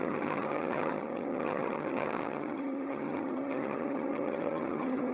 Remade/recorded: remade